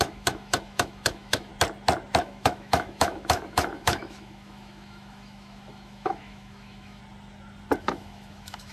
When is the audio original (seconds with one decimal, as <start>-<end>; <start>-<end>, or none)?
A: 1.5-2.2; 7.0-7.8